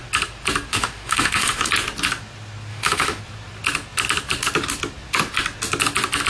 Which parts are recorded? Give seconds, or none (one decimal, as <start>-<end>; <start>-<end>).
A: 0.0-0.7; 1.7-2.7; 3.2-6.3